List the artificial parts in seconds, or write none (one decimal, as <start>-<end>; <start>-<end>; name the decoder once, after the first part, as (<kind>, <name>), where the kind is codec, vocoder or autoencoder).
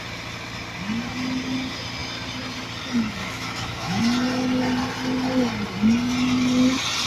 3.2-4.0 (autoencoder, DAC-VAE)